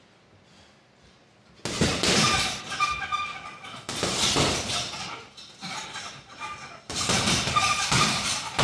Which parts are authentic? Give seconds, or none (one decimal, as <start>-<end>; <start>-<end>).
0.0-8.6